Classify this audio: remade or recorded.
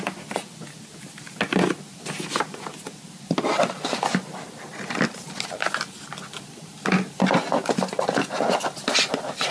recorded